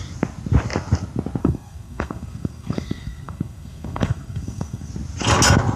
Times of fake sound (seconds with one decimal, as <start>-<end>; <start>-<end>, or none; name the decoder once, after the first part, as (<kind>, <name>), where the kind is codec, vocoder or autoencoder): 1.4-4.9 (codec, SNAC)